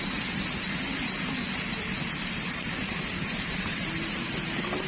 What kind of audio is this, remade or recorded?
remade